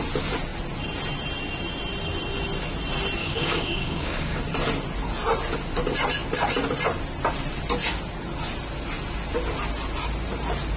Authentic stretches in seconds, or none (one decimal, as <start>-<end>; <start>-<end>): 0.0-3.2; 4.4-10.8